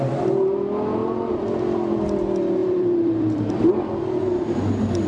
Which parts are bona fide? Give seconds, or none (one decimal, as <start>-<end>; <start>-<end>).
0.0-1.0; 2.0-2.6; 3.6-5.1